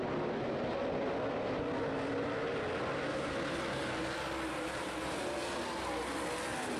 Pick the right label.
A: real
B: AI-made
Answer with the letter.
A